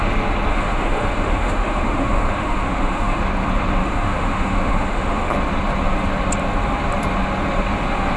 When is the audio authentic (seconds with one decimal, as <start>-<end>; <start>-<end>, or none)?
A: 0.0-0.5; 3.2-3.8; 5.3-8.2